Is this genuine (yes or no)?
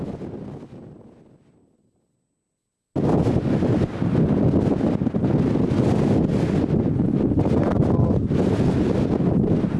yes